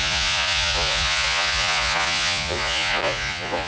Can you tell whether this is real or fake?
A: fake